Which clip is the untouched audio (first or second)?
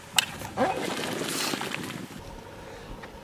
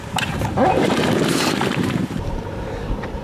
first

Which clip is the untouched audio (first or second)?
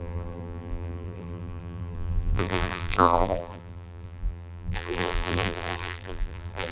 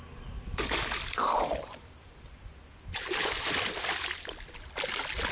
second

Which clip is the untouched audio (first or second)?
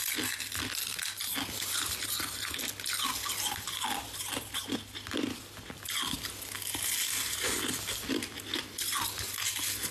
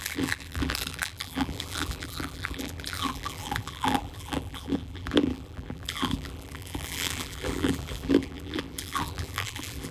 first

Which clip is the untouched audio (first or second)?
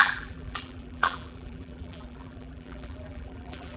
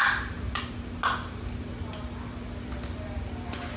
second